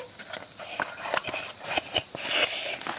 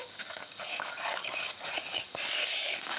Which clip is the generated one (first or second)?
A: second